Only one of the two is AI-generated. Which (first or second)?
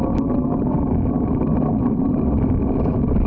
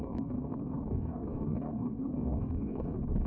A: second